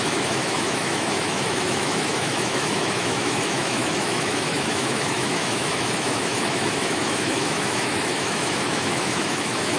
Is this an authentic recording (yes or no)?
no